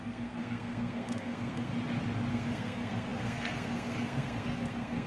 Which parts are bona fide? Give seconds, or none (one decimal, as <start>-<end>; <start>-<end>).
1.7-2.3